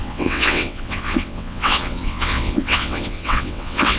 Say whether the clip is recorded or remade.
remade